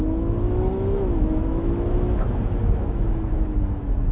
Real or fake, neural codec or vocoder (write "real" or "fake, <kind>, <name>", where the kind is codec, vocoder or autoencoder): fake, autoencoder, DAC-VAE